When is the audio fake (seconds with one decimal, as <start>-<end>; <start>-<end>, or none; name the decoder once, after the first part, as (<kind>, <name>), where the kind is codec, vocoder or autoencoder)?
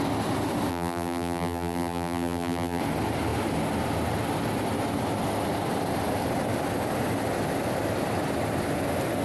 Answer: 0.7-2.8 (vocoder, BigVGAN v2)